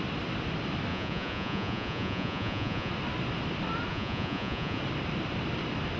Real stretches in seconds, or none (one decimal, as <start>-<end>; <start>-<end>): 0.0-0.9; 2.9-3.9; 4.8-6.0